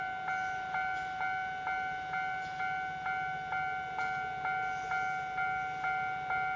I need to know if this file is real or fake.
real